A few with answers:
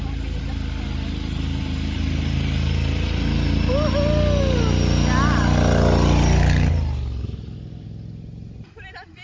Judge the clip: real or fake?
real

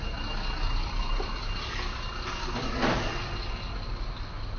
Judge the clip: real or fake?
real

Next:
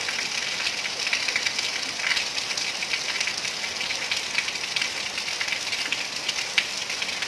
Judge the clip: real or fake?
real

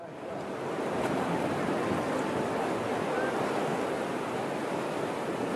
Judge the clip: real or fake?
real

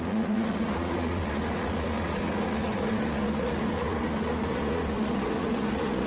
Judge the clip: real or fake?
fake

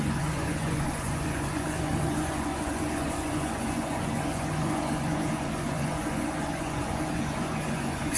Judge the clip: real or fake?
fake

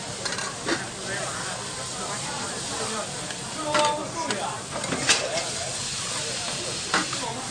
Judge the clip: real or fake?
real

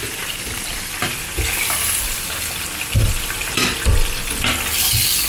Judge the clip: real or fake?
real